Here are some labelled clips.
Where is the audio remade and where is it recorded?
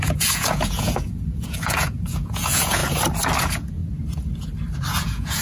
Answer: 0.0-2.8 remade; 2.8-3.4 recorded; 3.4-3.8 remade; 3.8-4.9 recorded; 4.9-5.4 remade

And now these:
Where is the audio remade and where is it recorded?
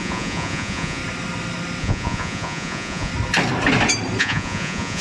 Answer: 0.0-1.0 remade; 1.0-1.8 recorded; 1.8-3.1 remade; 3.1-4.2 recorded; 4.2-5.0 remade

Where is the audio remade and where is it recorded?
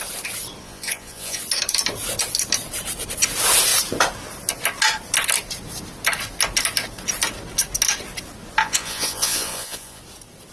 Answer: 0.0-0.6 recorded; 0.6-1.4 remade; 1.4-8.6 recorded; 8.6-10.0 remade; 10.0-10.5 recorded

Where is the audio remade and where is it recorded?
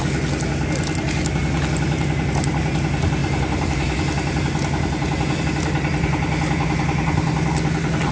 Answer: 0.0-8.1 recorded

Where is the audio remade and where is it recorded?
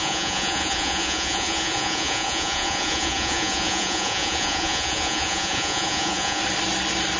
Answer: 0.0-6.4 remade; 6.4-7.2 recorded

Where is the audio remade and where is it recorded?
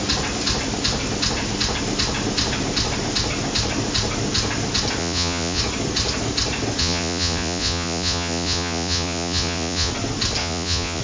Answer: 0.0-5.0 recorded; 5.0-5.6 remade; 5.6-6.8 recorded; 6.8-9.9 remade; 9.9-10.4 recorded; 10.4-11.0 remade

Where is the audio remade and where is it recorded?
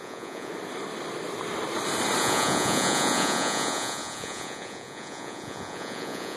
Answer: 0.0-0.5 remade; 0.5-2.2 recorded; 2.2-6.4 remade